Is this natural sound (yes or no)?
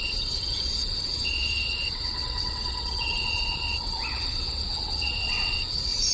no